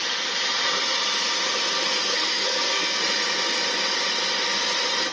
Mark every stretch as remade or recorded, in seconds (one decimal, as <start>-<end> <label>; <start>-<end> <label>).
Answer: 0.0-2.0 recorded; 2.0-3.0 remade; 3.0-5.1 recorded